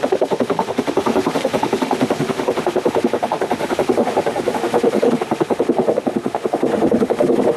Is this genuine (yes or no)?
no